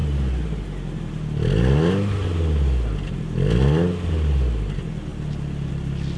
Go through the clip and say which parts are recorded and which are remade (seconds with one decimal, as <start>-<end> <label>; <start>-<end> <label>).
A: 0.0-6.2 recorded